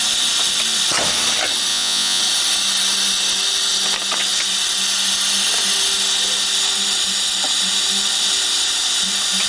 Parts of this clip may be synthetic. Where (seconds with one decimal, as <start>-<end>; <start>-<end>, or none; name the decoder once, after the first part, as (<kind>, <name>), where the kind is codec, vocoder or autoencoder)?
1.7-2.2 (vocoder, Vocos)